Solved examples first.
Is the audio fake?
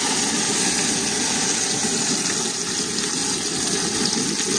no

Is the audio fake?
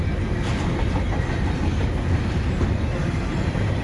yes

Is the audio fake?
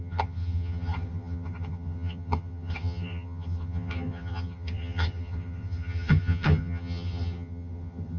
yes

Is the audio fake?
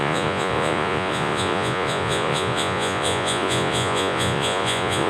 yes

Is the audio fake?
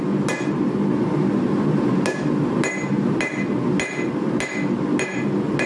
no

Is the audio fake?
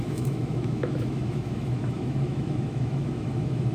yes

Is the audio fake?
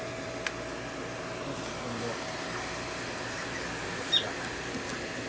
no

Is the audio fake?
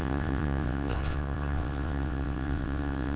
yes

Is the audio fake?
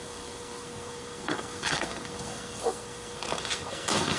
yes